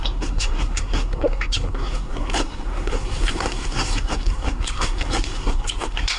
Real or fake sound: fake